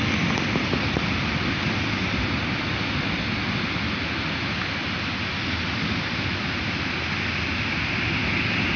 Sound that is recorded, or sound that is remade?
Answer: recorded